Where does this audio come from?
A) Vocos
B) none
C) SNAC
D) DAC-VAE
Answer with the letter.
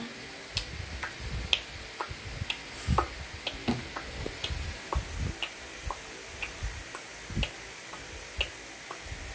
B